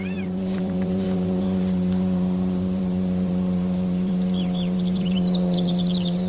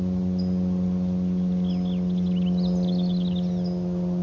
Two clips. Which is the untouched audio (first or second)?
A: second